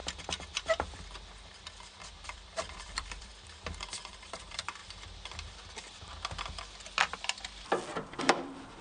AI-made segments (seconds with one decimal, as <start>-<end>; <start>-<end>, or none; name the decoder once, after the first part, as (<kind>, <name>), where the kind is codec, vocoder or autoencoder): 2.1-3.3 (vocoder, BigVGAN v2); 4.1-4.8; 8.2-8.8